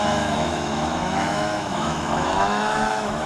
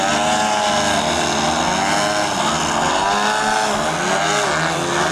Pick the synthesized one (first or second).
first